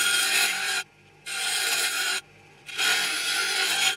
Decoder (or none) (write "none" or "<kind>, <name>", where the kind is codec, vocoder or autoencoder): none